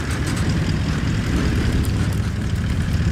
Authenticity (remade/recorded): remade